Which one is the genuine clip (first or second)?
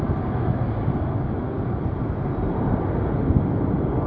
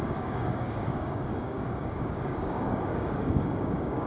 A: first